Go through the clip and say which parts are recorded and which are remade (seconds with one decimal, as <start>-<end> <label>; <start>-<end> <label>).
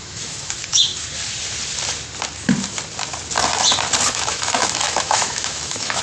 0.0-0.9 remade; 0.9-4.1 recorded; 4.1-6.0 remade